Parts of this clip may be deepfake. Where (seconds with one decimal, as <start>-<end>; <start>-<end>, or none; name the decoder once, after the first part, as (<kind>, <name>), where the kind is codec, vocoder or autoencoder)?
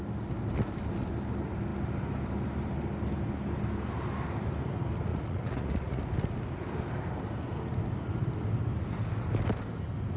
5.1-6.0 (vocoder, Vocos)